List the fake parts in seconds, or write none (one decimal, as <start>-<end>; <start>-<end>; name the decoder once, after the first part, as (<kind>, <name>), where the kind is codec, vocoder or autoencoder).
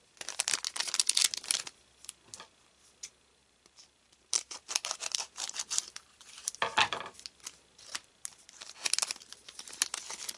3.4-6.4 (vocoder, BigVGAN v2)